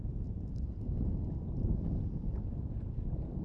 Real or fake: real